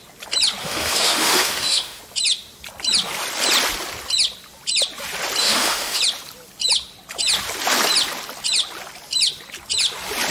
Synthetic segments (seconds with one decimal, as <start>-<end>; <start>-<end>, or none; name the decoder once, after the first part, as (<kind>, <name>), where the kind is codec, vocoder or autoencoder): 0.6-2.0 (autoencoder, DAC-VAE); 5.4-6.0